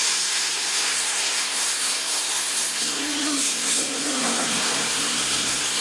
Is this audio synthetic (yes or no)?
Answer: yes